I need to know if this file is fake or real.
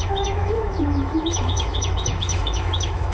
fake